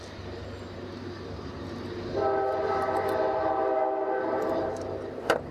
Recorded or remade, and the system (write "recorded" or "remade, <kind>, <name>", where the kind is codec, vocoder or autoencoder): recorded